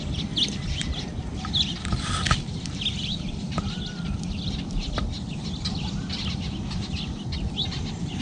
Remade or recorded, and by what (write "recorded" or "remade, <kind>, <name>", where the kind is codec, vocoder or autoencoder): recorded